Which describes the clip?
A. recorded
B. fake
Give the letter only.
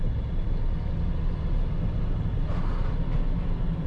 A